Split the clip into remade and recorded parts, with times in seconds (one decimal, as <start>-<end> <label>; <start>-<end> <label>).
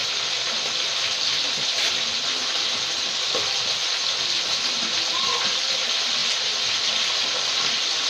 0.0-8.1 recorded